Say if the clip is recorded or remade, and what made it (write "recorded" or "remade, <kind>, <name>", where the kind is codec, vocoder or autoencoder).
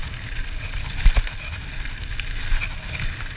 recorded